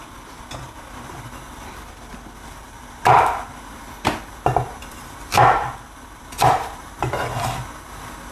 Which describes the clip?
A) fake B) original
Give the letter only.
A